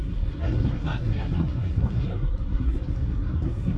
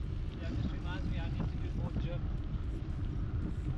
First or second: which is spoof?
first